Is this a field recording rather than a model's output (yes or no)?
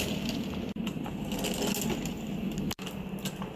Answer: yes